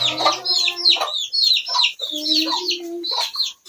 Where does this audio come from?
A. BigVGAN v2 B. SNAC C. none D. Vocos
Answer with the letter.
C